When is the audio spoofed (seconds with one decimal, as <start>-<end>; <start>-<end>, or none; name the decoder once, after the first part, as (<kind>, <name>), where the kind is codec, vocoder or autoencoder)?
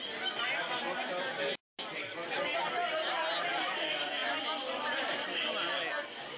none